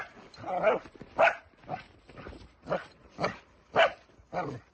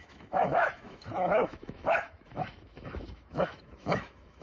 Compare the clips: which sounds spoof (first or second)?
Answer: second